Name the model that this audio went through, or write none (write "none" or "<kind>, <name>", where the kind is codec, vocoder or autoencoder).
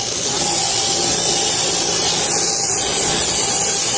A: none